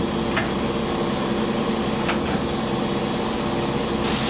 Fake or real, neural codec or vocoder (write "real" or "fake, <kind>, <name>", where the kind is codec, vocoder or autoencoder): real